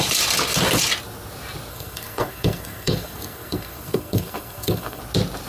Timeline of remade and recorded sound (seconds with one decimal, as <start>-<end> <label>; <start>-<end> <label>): 0.0-1.7 recorded; 1.7-5.0 remade; 5.0-5.5 recorded